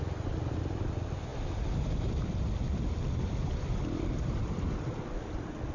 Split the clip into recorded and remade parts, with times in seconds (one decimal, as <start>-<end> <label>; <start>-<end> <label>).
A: 0.0-5.7 recorded